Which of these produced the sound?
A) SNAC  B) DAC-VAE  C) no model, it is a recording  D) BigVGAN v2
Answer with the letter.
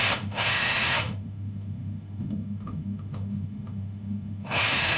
B